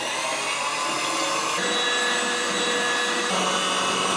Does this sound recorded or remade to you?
recorded